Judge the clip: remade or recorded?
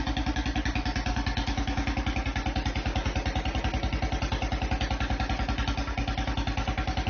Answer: recorded